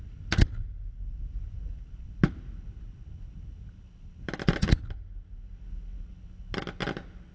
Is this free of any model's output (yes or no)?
yes